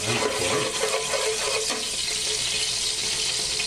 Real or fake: real